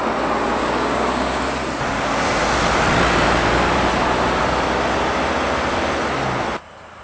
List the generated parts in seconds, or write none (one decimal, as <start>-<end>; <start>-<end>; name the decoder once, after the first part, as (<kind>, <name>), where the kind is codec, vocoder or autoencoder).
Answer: 0.6-1.4 (codec, DAC)